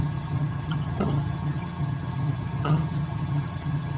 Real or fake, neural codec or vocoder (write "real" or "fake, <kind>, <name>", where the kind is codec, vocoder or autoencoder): fake, vocoder, HiFi-GAN